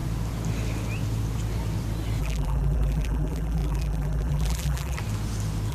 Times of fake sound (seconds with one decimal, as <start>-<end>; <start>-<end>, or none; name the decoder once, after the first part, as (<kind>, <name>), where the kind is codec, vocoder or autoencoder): 2.2-5.0 (vocoder, BigVGAN v2)